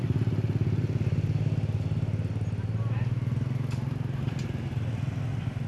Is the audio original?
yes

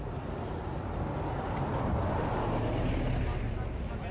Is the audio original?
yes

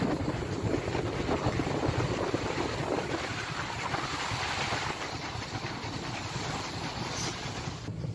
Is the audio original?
no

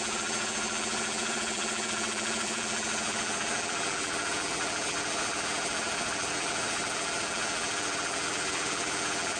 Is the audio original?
no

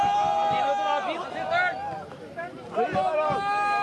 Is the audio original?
yes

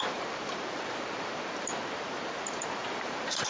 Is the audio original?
no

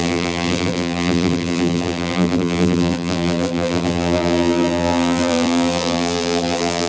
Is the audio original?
no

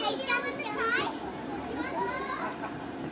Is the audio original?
no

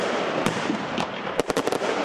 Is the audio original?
no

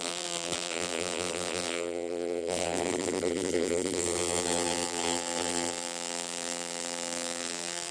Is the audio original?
no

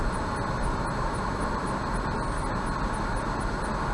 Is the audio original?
yes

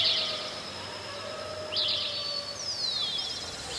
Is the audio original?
yes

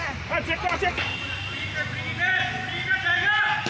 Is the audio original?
yes